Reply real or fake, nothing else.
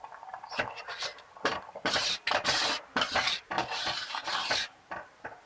fake